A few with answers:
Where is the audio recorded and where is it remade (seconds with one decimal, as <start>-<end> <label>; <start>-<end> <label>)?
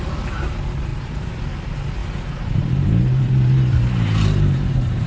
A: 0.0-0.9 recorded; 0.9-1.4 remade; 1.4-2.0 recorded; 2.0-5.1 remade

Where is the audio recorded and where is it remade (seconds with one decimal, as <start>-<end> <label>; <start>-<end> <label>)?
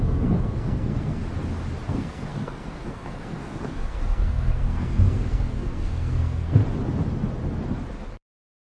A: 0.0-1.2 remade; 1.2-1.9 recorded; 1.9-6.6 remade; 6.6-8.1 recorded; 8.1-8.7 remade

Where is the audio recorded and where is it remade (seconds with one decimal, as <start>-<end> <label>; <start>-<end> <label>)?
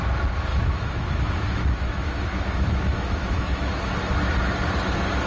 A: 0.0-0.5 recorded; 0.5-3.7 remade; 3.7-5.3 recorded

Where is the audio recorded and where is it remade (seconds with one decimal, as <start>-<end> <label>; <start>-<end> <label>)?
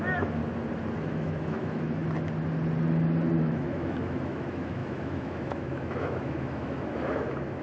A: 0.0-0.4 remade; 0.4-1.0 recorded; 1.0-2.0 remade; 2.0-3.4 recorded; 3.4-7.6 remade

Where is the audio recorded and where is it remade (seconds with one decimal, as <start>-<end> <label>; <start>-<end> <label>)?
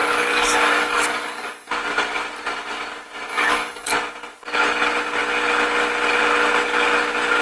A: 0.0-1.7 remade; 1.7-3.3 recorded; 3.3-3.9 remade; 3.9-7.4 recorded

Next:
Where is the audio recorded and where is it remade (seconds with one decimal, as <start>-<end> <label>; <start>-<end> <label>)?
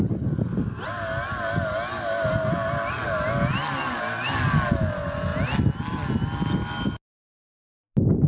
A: 0.0-8.3 recorded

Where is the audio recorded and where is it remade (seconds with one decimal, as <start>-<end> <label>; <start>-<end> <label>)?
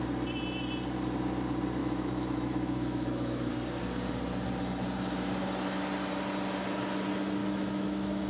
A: 0.0-1.8 recorded; 1.8-3.5 remade; 3.5-7.4 recorded; 7.4-8.3 remade